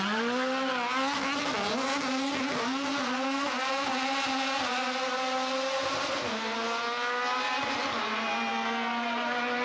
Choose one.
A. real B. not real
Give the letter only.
A